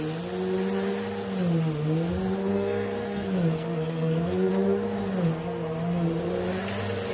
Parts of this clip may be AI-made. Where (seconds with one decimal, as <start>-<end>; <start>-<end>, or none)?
2.5-4.5